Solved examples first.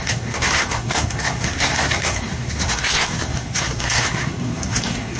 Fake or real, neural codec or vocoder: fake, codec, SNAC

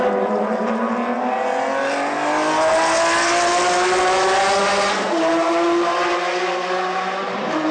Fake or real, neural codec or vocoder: real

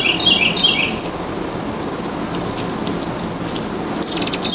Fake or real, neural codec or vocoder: real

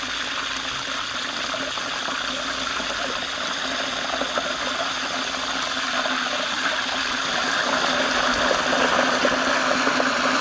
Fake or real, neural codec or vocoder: real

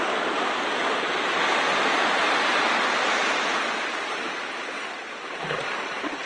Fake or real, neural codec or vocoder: real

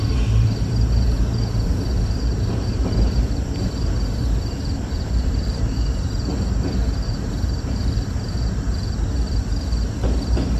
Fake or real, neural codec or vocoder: fake, vocoder, BigVGAN v2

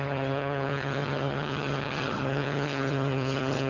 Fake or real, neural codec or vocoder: fake, vocoder, HiFi-GAN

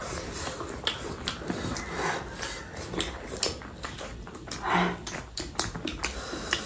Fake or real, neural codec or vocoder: real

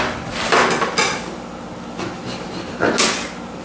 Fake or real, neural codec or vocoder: real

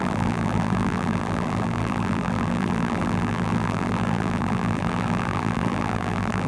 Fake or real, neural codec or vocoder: fake, vocoder, BigVGAN v2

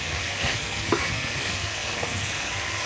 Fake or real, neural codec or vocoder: fake, codec, SNAC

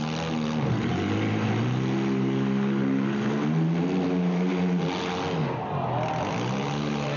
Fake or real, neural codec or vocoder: real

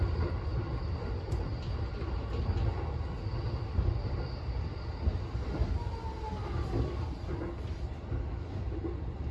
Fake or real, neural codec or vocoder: real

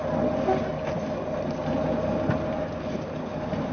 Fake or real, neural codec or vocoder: real